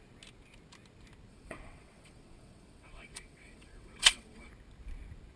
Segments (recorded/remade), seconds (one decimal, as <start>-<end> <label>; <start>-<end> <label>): 0.0-1.3 recorded; 1.3-4.5 remade; 4.5-5.4 recorded